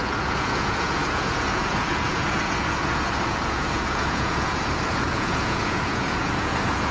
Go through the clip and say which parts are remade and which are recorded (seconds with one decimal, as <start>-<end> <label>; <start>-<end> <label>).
0.0-6.9 remade

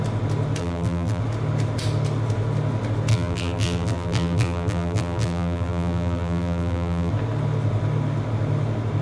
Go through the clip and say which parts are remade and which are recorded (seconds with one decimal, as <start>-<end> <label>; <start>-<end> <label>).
0.0-0.6 recorded; 0.6-1.2 remade; 1.2-3.1 recorded; 3.1-7.1 remade; 7.1-9.0 recorded

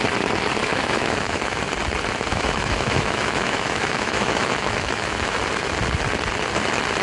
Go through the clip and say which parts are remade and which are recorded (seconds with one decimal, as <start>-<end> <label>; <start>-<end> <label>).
0.0-0.7 recorded; 0.7-1.6 remade; 1.6-2.3 recorded; 2.3-5.4 remade; 5.4-7.0 recorded

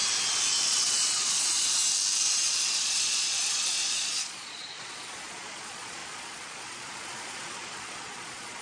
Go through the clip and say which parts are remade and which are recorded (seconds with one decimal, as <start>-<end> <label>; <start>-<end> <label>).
0.0-0.6 recorded; 0.6-1.8 remade; 1.8-2.5 recorded; 2.5-8.6 remade

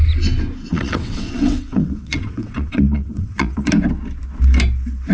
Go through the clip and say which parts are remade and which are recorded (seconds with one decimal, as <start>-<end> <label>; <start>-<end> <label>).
0.0-0.7 recorded; 0.7-3.7 remade; 3.7-5.1 recorded

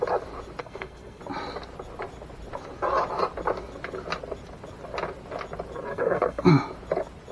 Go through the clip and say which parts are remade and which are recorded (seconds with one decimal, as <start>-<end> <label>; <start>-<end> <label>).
0.0-0.6 recorded; 0.6-1.2 remade; 1.2-5.9 recorded; 5.9-6.5 remade; 6.5-7.3 recorded

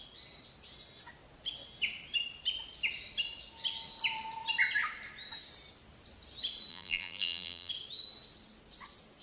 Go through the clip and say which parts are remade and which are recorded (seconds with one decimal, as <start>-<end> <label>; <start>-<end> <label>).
0.0-6.7 recorded; 6.7-7.7 remade; 7.7-9.2 recorded